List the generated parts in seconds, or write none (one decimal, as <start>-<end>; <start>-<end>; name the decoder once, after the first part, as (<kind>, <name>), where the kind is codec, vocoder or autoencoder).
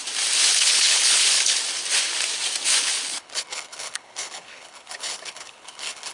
0.5-1.6 (codec, HILCodec); 2.8-6.1